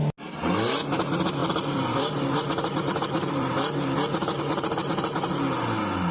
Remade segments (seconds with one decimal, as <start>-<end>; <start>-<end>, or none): 1.4-4.4